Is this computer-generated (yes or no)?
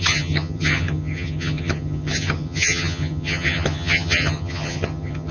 yes